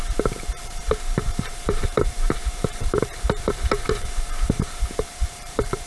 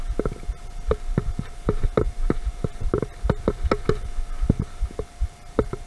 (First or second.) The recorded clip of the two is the second